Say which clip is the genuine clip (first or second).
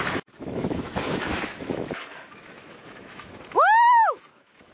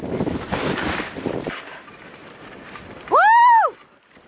second